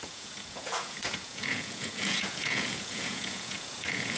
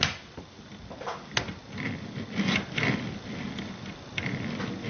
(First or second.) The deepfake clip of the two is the first